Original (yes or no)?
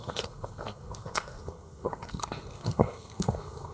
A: no